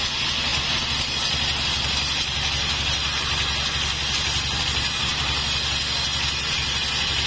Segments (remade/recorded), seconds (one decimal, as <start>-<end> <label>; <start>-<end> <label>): 0.0-7.3 recorded